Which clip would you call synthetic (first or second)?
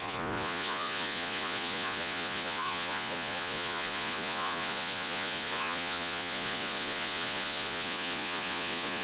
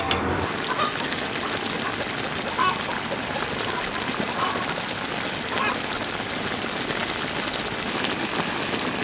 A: first